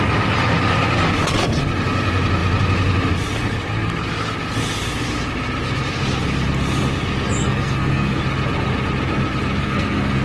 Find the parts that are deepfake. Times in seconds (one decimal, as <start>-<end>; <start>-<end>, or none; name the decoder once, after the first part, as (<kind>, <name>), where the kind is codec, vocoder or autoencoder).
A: 7.4-8.2 (codec, SNAC); 9.6-10.2